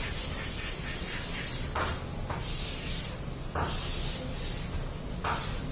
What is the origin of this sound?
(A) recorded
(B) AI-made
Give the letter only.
A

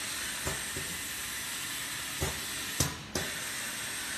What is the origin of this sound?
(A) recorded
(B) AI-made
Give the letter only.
A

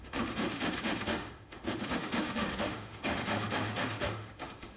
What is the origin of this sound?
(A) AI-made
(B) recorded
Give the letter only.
A